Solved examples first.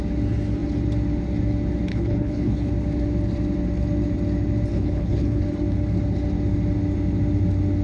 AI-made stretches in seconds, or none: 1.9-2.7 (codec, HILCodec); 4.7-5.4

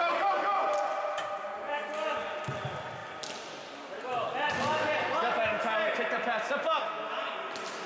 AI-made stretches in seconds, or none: none

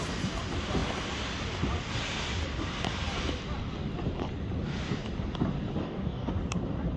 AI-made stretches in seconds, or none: 5.8-6.3 (codec, DAC)

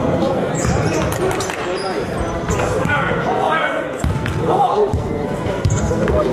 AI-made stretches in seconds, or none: 0.0-0.5 (codec, SNAC); 2.6-6.3

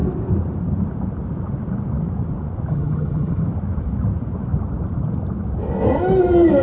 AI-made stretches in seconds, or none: 2.7-3.4 (vocoder, HiFi-GAN)

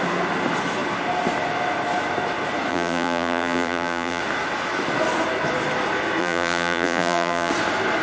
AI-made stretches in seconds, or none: 2.7-4.2 (vocoder, BigVGAN v2); 6.2-7.5

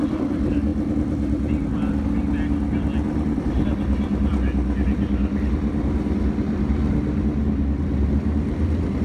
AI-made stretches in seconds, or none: none